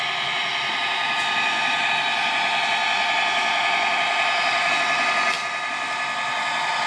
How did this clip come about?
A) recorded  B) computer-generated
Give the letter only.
A